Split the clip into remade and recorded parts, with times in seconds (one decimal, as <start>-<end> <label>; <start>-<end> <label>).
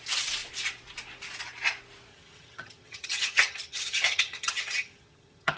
0.0-2.1 recorded; 2.1-5.6 remade